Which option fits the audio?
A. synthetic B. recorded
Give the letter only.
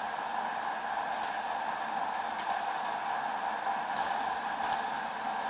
B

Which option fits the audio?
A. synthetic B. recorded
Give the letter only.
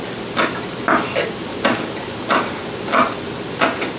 B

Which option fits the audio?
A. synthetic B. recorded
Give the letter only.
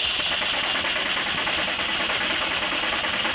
B